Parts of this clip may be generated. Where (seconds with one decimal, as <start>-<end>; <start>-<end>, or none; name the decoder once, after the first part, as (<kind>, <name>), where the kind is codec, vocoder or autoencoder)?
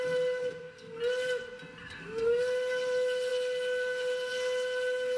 0.4-1.0 (codec, SNAC); 1.8-2.4